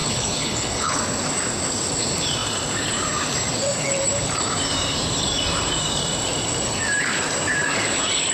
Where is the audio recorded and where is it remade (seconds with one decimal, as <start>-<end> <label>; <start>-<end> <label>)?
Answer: 0.0-1.0 remade; 1.0-8.3 recorded